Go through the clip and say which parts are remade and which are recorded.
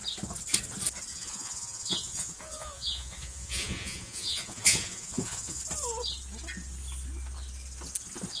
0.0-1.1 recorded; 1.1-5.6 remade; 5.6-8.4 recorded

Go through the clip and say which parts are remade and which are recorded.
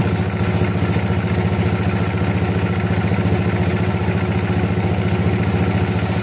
0.0-6.2 recorded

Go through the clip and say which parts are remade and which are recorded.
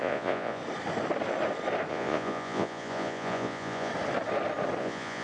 0.0-0.6 remade; 0.6-1.9 recorded; 1.9-3.9 remade; 3.9-4.8 recorded; 4.8-5.2 remade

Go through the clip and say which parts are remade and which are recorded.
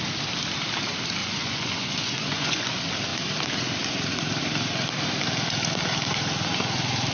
0.0-1.2 recorded; 1.2-2.7 remade; 2.7-7.1 recorded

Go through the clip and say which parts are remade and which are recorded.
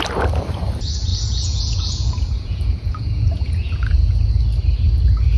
0.0-1.1 recorded; 1.1-4.3 remade; 4.3-5.4 recorded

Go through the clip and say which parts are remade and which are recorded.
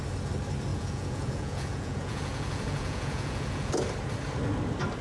0.0-0.7 recorded; 0.7-3.7 remade; 3.7-5.0 recorded